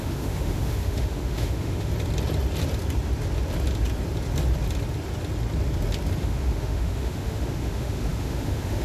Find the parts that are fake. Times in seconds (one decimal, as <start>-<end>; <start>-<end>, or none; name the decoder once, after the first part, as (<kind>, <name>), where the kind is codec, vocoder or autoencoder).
0.0-1.9 (autoencoder, DAC-VAE); 6.2-8.8